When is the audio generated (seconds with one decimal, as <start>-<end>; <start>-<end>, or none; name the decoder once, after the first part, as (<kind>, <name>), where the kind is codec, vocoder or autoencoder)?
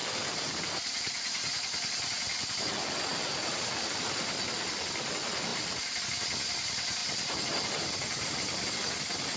5.5-6.0 (vocoder, BigVGAN v2); 7.0-8.7